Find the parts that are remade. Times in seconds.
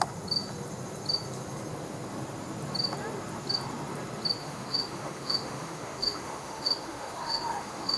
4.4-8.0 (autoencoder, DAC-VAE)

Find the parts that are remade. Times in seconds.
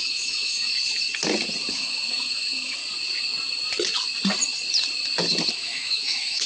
0.0-0.7 (autoencoder, DAC-VAE); 1.7-2.8; 5.5-6.5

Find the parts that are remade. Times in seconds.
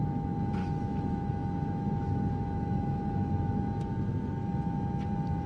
0.6-3.9 (autoencoder, DAC-VAE)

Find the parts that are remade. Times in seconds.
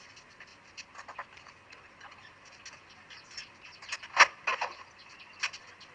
none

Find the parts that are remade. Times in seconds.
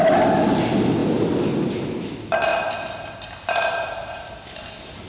none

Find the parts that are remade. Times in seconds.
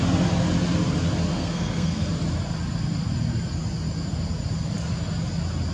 1.3-2.1 (codec, SNAC)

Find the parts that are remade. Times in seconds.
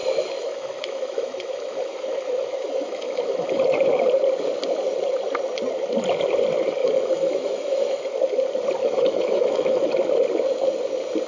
0.0-3.6 (autoencoder, DAC-VAE); 6.8-8.1; 8.8-9.9